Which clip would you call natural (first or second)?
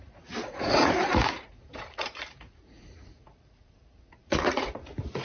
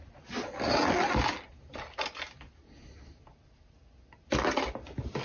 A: second